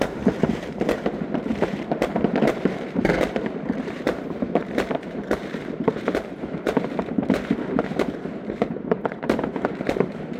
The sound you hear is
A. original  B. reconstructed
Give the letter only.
B